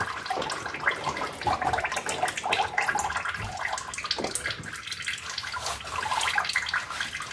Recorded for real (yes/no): yes